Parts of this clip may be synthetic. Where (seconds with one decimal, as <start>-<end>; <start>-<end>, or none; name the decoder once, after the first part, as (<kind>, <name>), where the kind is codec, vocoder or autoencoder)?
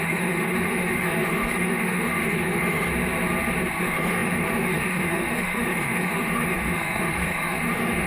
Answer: 0.0-2.9 (autoencoder, DAC-VAE); 3.8-8.1